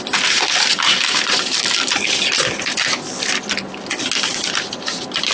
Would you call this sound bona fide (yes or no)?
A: yes